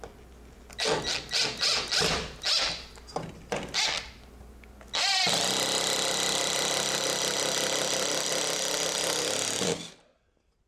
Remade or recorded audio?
recorded